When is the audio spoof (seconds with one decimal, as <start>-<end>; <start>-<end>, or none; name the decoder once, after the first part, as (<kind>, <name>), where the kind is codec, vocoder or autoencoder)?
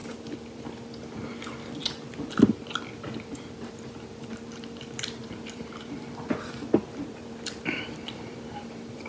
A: 0.0-9.1 (vocoder, BigVGAN v2)